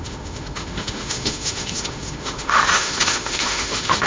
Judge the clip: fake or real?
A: fake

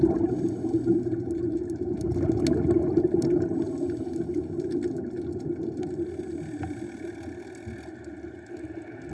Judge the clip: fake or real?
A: real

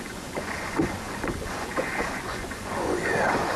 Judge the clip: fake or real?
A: fake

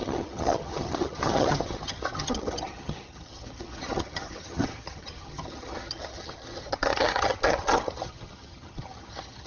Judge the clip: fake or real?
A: fake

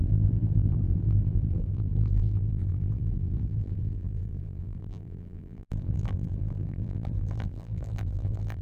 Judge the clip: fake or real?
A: fake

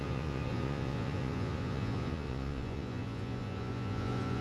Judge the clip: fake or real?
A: fake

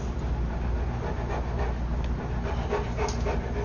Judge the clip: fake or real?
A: real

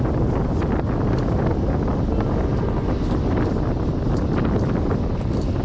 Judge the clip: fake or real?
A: real